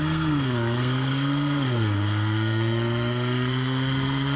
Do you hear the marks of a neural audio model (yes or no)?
yes